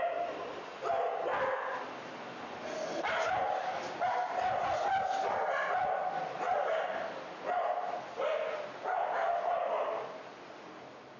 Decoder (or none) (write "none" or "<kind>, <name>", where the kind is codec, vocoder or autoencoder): none